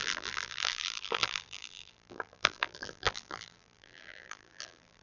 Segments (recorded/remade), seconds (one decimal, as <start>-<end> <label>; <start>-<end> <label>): 0.0-5.0 remade